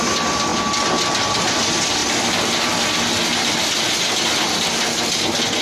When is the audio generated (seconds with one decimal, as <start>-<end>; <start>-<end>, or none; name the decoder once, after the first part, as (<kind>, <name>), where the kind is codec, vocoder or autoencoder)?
none